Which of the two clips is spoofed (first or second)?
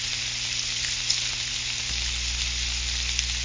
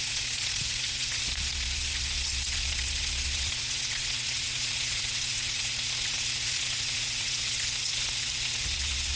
second